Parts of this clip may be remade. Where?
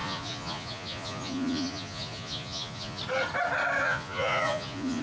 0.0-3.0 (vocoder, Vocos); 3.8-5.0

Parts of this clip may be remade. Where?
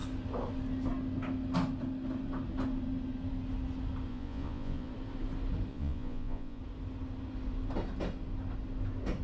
4.1-4.9 (vocoder, Vocos); 5.7-6.6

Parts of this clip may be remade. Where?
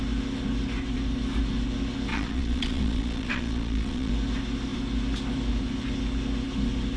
2.1-4.1 (vocoder, Vocos)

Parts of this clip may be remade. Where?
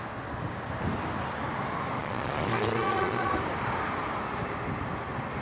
2.0-3.3 (vocoder, Vocos)